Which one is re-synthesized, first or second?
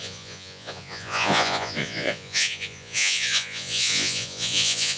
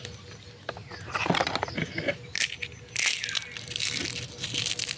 first